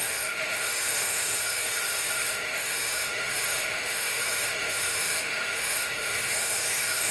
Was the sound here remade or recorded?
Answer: remade